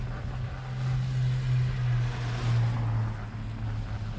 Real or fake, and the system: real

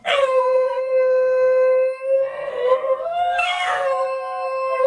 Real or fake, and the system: fake, codec, SNAC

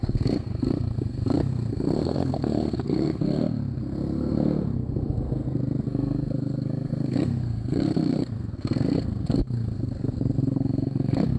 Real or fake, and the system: fake, codec, SNAC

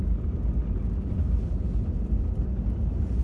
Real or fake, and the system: real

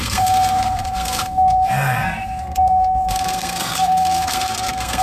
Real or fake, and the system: fake, codec, SNAC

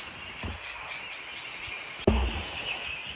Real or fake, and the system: real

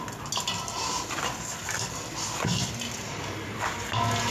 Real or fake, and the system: real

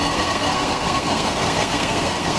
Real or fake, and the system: fake, codec, SNAC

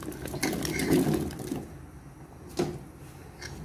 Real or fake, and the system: real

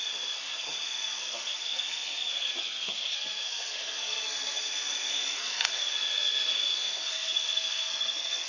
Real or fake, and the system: fake, codec, SNAC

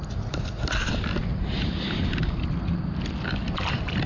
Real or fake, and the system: real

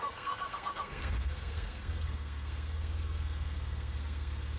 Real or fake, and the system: fake, codec, SNAC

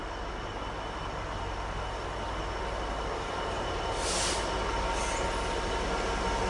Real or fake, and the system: real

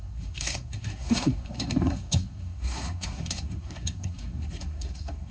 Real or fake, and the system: fake, codec, SNAC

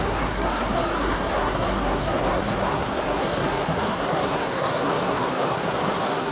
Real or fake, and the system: fake, codec, SNAC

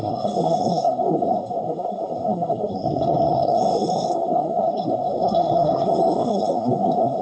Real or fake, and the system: fake, codec, SNAC